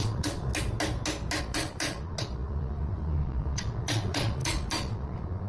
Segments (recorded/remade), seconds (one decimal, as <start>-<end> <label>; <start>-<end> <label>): 0.0-0.5 remade; 0.5-1.4 recorded; 1.4-5.5 remade